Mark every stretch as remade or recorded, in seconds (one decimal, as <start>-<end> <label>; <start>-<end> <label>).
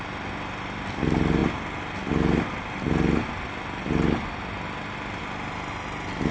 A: 0.0-6.3 recorded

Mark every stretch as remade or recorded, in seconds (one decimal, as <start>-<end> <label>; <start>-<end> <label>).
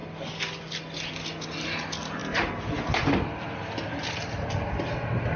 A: 0.0-5.4 recorded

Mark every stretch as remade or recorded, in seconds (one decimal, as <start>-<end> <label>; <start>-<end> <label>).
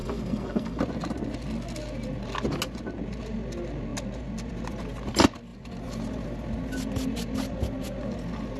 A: 0.0-0.8 remade; 0.8-8.6 recorded